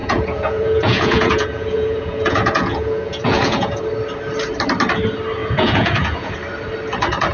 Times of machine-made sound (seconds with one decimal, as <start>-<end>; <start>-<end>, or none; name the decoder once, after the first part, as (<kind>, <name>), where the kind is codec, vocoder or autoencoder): 0.0-3.8 (vocoder, Vocos); 5.4-6.3